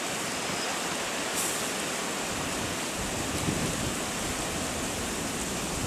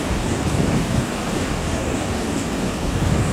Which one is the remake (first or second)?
second